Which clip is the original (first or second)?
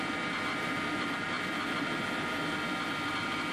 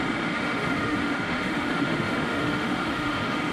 first